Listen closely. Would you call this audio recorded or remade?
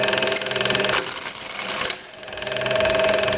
recorded